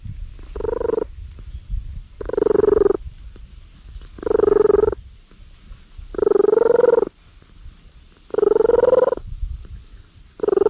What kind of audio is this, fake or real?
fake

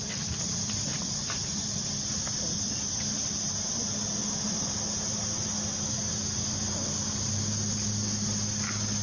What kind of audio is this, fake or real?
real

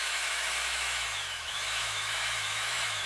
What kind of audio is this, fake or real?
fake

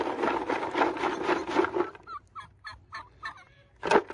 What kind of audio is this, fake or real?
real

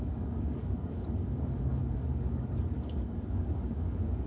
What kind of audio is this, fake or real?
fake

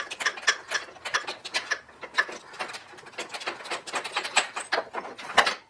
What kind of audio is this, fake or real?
real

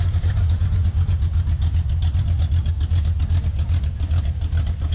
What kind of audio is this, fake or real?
real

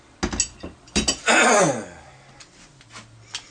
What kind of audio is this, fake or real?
real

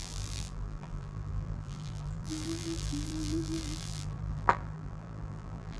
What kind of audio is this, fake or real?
fake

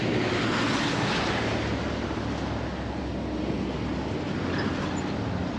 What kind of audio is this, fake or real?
real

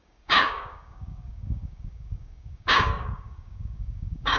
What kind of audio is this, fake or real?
fake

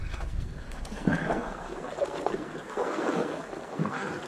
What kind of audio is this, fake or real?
fake